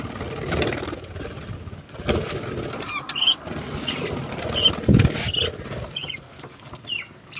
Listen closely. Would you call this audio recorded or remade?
recorded